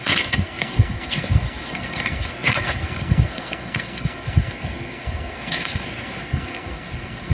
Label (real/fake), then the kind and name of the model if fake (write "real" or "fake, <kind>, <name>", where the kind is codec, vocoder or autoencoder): fake, codec, SNAC